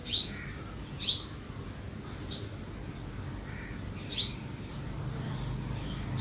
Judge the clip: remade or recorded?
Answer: recorded